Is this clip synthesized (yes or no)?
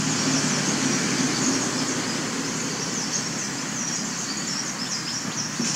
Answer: no